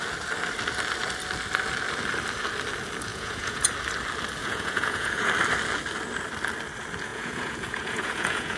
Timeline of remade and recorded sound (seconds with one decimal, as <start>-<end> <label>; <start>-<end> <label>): 0.0-3.1 recorded; 3.1-3.7 remade; 3.7-4.4 recorded; 4.4-5.3 remade; 5.3-7.1 recorded; 7.1-8.6 remade